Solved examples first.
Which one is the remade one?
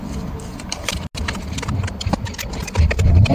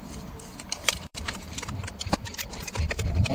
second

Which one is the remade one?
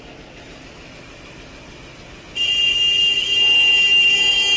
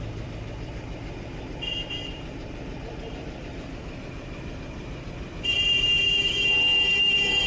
second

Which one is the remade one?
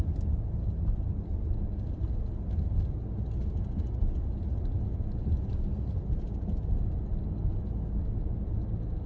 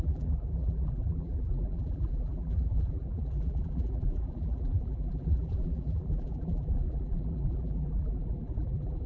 second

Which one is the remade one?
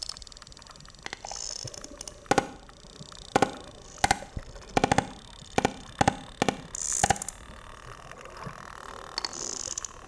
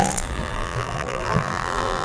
second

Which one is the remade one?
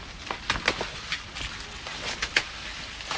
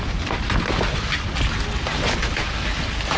second